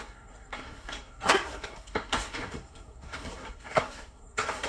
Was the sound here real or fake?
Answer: fake